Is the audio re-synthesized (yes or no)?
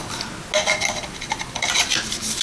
no